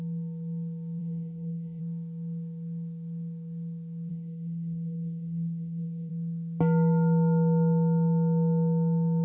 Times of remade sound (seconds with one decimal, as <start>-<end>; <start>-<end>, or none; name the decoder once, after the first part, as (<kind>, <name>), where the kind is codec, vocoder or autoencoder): 1.0-1.8 (codec, DAC); 4.1-6.1